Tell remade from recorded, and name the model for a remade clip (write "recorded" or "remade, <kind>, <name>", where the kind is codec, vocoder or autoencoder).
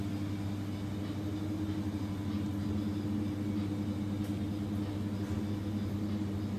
recorded